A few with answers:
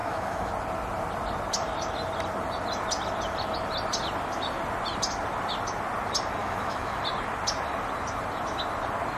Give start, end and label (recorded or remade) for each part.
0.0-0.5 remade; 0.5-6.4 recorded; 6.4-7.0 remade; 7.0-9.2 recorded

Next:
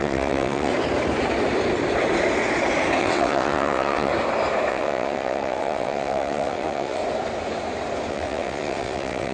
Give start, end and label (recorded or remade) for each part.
0.0-0.7 remade; 0.7-3.0 recorded; 3.0-4.1 remade; 4.1-4.7 recorded; 4.7-7.0 remade; 7.0-8.1 recorded; 8.1-9.3 remade

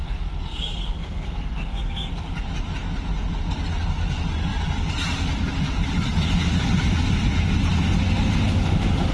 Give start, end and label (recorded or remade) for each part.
0.0-2.1 remade; 2.1-9.1 recorded

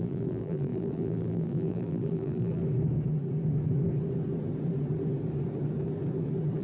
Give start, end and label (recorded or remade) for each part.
0.0-2.6 remade; 2.6-6.6 recorded